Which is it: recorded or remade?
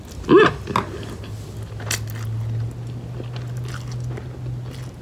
recorded